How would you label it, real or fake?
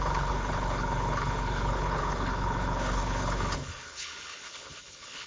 fake